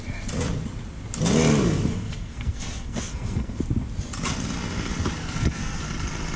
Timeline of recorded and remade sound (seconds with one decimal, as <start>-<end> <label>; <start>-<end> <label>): 0.0-1.9 recorded; 1.9-3.6 remade; 3.6-5.2 recorded; 5.2-5.8 remade; 5.8-6.4 recorded